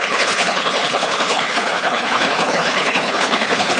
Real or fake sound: fake